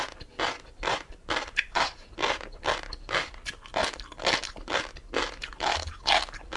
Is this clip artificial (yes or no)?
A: no